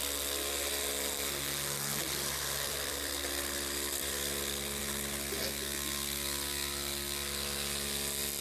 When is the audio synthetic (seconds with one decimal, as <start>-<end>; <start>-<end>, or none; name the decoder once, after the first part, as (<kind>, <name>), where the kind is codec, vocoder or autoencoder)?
2.0-4.8 (vocoder, BigVGAN v2)

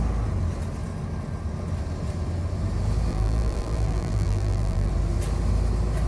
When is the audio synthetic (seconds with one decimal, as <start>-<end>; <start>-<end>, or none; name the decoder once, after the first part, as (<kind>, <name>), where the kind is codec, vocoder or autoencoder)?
3.1-4.9 (vocoder, BigVGAN v2)

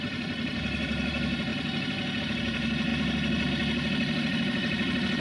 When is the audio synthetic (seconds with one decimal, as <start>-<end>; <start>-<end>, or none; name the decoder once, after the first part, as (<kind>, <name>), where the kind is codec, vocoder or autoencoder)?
0.0-1.5 (vocoder, BigVGAN v2); 2.2-5.2

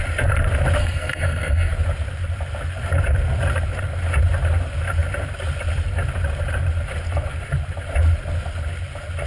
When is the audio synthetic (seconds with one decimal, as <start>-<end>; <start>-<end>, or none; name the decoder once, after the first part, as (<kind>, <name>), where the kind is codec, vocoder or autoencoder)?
0.8-1.7 (codec, SNAC)

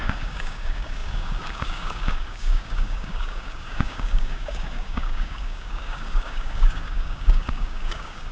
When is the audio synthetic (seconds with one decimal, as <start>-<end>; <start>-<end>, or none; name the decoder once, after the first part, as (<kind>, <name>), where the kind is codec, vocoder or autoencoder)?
0.0-8.3 (codec, DAC)